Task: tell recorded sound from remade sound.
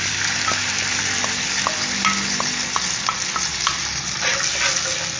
recorded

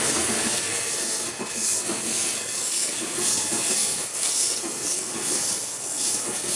remade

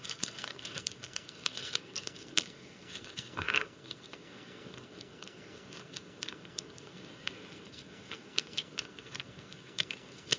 remade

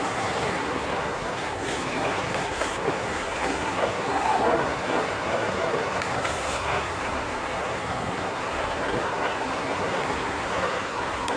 remade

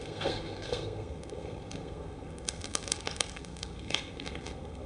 remade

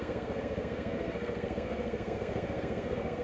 remade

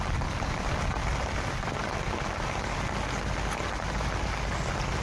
recorded